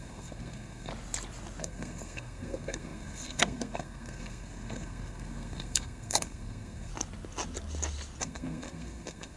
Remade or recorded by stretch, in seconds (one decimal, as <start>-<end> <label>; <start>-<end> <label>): 0.0-0.9 remade; 0.9-1.6 recorded; 1.6-6.9 remade; 6.9-8.2 recorded; 8.2-9.4 remade